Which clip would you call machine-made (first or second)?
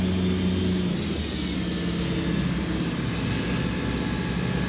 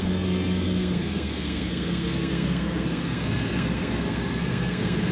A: second